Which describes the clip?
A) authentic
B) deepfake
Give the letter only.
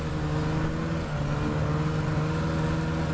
A